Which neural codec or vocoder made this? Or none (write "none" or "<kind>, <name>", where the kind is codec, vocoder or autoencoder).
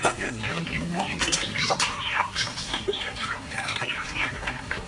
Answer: codec, SNAC